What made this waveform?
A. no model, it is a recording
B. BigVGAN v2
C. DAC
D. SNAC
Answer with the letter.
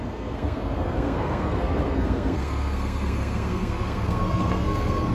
D